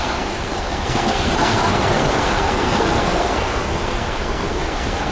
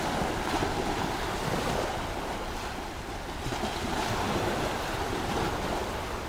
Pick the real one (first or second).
second